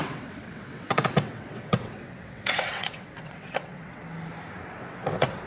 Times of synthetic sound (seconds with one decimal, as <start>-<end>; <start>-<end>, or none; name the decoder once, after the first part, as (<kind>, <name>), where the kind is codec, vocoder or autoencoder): 0.0-4.0 (vocoder, WaveNeXt); 4.7-5.5